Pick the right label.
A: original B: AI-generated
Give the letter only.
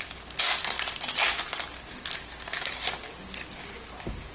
A